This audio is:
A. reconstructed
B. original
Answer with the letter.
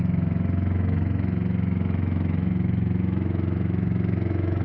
A